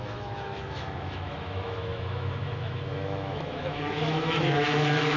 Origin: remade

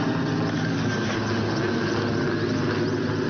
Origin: recorded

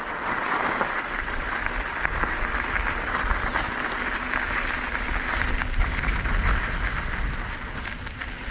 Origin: recorded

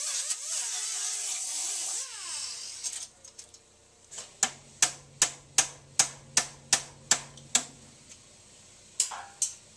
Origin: recorded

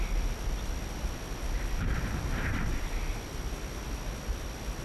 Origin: recorded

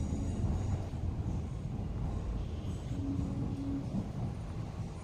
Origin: recorded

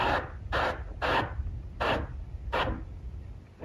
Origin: recorded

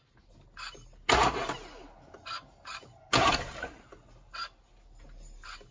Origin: recorded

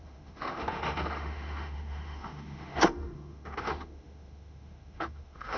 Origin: remade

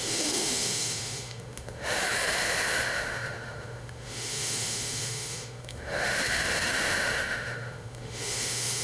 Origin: remade